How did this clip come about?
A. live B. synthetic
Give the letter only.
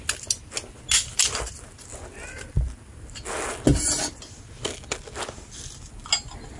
A